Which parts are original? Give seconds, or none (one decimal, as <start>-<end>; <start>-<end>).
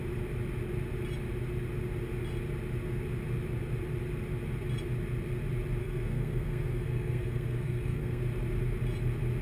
0.0-5.8; 8.2-9.4